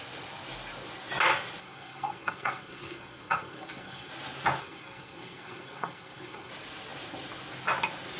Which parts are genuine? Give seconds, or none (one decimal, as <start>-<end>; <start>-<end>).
0.0-1.6; 4.1-4.6; 6.5-8.2